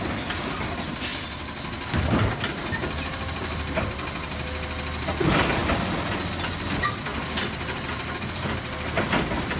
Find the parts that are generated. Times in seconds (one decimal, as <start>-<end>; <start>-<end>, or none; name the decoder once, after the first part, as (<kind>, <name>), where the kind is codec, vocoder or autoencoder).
none